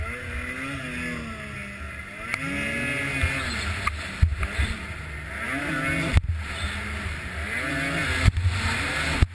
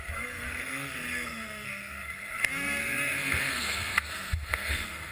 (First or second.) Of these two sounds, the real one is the first